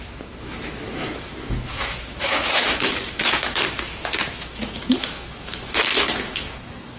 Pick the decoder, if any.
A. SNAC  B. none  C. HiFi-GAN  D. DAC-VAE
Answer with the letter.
D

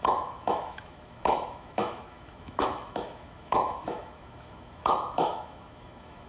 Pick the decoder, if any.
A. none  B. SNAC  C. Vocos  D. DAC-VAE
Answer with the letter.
D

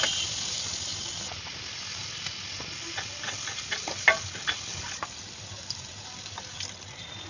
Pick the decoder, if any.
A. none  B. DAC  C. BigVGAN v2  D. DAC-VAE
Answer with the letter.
A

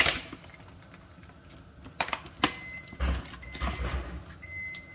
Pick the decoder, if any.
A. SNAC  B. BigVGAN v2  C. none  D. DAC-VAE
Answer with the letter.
C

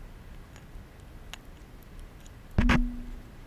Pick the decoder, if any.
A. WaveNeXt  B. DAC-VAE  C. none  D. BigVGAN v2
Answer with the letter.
C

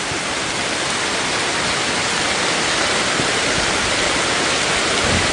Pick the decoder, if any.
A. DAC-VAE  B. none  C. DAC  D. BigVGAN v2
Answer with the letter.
B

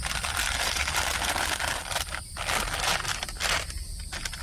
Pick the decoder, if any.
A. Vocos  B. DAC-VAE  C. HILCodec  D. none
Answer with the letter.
D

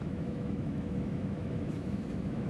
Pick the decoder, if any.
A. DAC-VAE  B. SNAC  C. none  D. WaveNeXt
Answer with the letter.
A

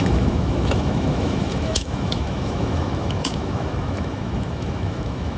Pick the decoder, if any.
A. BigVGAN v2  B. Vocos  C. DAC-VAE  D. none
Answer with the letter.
C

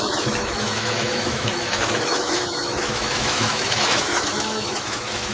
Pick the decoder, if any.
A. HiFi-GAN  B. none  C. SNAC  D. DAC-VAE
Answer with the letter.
D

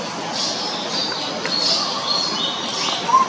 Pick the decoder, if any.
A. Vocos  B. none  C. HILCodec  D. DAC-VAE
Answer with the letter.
B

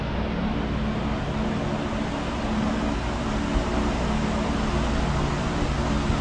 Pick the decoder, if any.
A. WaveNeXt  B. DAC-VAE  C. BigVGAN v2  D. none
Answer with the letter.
D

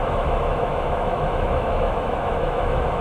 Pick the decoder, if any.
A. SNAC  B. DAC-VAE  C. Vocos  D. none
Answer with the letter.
B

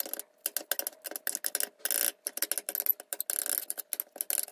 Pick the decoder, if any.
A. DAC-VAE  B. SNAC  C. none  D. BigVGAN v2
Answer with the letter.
C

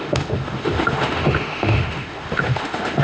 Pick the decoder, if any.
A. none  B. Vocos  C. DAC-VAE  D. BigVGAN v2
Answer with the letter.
C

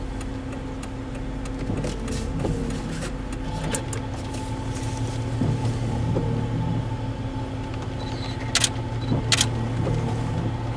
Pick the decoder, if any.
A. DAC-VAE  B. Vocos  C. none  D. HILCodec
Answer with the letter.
C